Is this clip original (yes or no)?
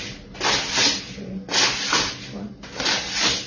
yes